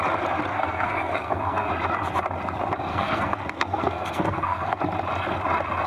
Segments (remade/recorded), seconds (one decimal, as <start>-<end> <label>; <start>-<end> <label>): 0.0-0.5 recorded; 0.5-1.7 remade; 1.7-2.9 recorded; 2.9-4.8 remade; 4.8-5.9 recorded